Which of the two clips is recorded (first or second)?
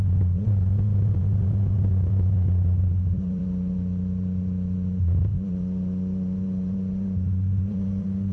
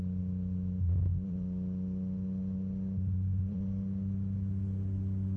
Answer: second